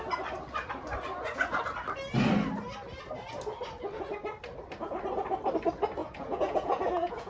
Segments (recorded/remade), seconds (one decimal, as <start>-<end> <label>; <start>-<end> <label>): 0.0-6.0 recorded; 6.0-7.3 remade